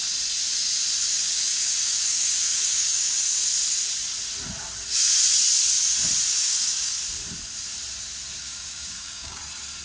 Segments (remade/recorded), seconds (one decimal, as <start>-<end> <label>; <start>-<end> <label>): 0.0-1.1 recorded; 1.1-3.2 remade; 3.2-6.3 recorded; 6.3-6.9 remade; 6.9-8.4 recorded; 8.4-9.4 remade; 9.4-9.8 recorded